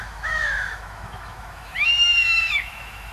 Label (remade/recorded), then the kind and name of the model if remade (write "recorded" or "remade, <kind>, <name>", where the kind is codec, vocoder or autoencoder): remade, autoencoder, DAC-VAE